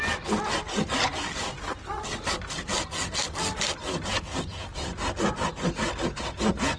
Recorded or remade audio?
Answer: recorded